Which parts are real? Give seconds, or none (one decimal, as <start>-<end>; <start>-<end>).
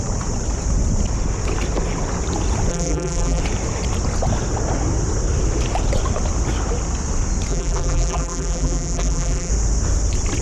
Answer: 0.0-2.7; 3.4-7.5; 9.5-10.4